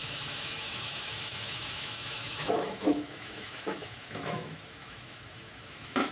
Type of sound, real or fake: fake